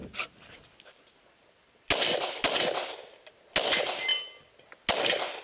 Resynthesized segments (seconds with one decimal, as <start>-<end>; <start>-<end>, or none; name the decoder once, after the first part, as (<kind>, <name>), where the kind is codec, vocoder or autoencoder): none